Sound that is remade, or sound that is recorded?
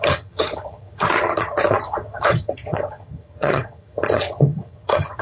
remade